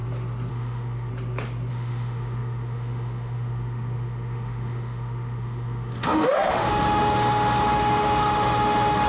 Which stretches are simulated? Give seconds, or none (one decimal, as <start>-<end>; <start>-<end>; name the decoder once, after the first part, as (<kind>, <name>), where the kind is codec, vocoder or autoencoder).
0.5-1.1 (autoencoder, DAC-VAE); 1.7-9.1